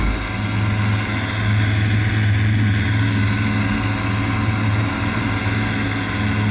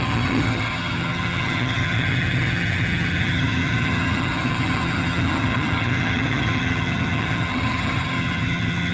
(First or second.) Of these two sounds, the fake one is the second